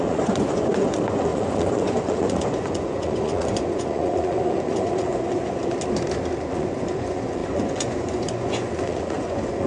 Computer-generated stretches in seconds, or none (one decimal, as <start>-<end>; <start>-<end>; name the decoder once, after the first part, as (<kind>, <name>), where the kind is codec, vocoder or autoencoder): 0.0-5.6 (vocoder, Vocos); 6.4-9.7